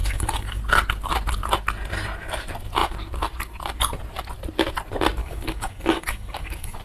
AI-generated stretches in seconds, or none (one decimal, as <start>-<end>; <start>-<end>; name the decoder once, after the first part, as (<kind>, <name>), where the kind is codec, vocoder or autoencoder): 0.0-0.6 (codec, DAC); 5.2-6.8